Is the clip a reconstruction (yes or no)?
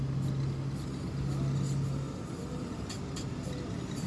no